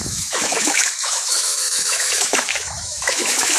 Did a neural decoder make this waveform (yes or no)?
yes